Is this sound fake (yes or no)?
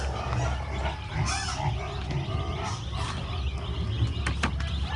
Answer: no